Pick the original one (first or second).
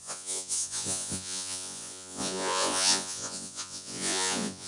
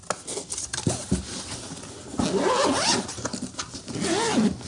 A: second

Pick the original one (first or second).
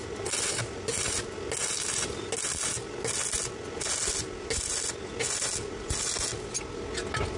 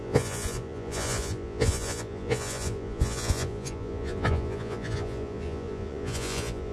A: first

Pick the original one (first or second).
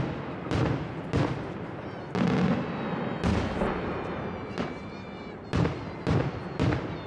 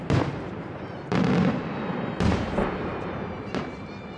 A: first